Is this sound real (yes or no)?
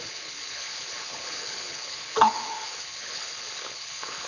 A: no